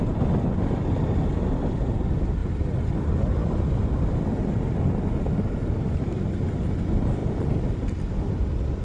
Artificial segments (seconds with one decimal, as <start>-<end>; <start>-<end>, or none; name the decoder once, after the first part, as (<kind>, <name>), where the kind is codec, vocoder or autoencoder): none